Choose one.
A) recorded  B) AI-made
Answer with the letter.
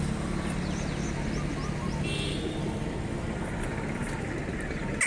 A